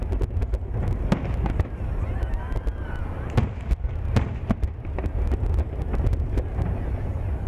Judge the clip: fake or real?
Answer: real